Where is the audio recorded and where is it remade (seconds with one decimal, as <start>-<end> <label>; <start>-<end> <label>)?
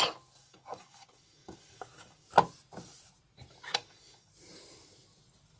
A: 0.0-0.4 recorded; 0.4-2.3 remade; 2.3-3.7 recorded; 3.7-4.3 remade; 4.3-5.6 recorded